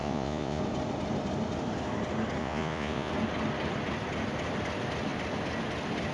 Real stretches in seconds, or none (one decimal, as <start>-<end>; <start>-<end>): 0.6-2.4; 3.1-6.1